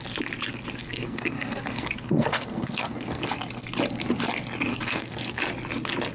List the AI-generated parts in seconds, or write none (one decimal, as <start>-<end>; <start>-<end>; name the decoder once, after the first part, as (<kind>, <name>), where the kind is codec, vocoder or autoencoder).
0.8-3.2 (codec, SNAC); 4.7-5.4